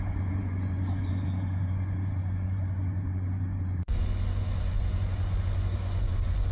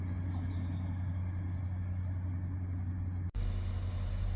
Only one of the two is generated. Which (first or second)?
first